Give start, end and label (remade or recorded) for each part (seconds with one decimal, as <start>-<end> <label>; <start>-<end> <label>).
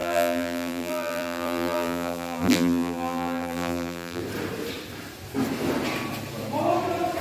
0.0-4.2 remade; 4.2-7.2 recorded